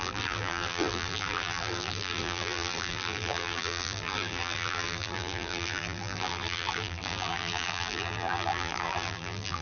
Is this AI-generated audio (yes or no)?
yes